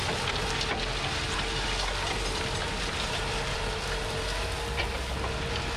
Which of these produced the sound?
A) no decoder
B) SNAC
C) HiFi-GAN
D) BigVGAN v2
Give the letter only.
A